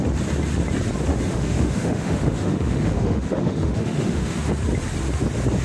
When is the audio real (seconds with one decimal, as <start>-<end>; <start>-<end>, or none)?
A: 0.0-1.1; 4.5-5.6